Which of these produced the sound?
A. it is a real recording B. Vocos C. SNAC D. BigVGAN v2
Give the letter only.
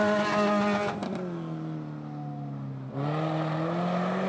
A